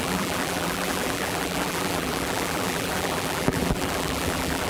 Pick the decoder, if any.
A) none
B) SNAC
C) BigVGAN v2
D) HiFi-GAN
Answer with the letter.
C